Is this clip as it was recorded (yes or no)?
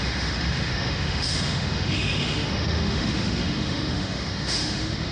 no